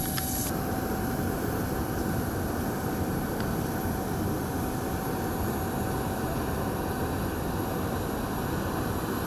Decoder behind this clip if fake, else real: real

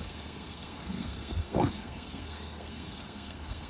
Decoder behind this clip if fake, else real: fake, codec, SNAC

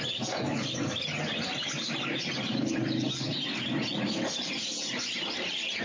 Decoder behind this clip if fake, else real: real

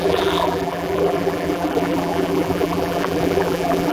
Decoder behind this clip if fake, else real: fake, vocoder, BigVGAN v2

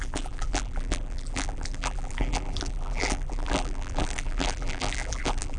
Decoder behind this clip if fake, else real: fake, vocoder, BigVGAN v2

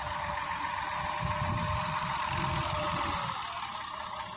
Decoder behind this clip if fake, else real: real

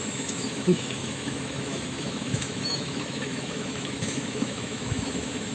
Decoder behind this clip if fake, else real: fake, autoencoder, DAC-VAE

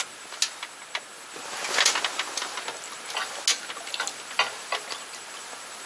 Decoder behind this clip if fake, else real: real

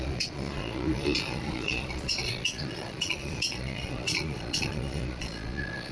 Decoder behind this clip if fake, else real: fake, vocoder, Vocos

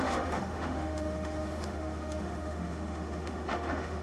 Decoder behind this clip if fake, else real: fake, autoencoder, DAC-VAE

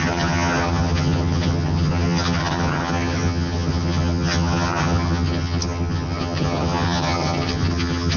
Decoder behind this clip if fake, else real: fake, vocoder, HiFi-GAN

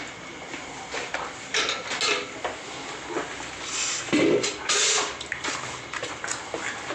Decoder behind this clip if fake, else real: real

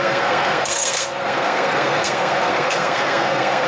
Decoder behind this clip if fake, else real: fake, codec, SNAC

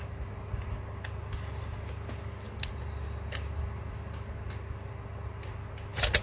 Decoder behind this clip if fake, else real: real